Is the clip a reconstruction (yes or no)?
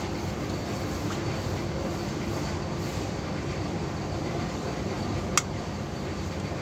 no